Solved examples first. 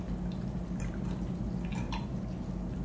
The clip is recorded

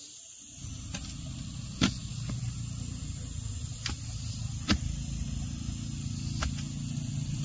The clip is recorded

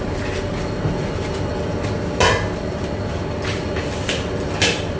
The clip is recorded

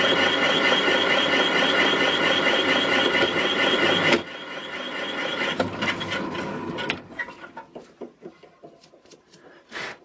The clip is recorded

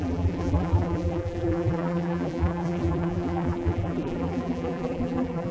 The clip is remade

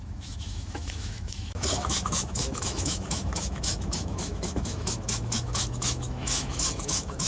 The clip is remade